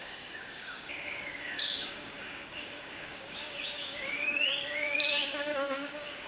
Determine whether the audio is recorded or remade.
remade